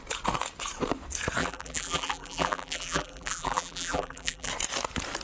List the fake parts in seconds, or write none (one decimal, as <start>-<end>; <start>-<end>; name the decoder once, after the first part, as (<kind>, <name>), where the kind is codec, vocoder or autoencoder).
1.4-4.5 (vocoder, BigVGAN v2)